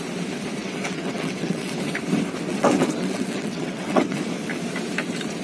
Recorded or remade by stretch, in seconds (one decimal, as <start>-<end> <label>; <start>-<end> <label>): 0.0-0.6 recorded; 0.6-1.8 remade; 1.8-2.5 recorded; 2.5-4.2 remade; 4.2-5.4 recorded